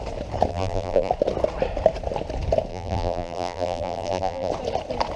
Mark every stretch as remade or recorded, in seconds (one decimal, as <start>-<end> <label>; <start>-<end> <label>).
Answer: 0.0-0.5 recorded; 0.5-1.1 remade; 1.1-2.7 recorded; 2.7-4.5 remade; 4.5-5.2 recorded